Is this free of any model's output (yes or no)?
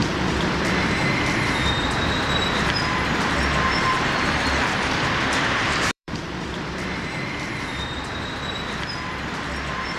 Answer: no